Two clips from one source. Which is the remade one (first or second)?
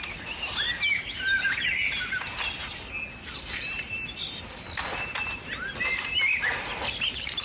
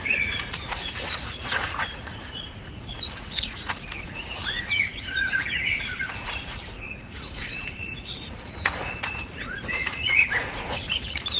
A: second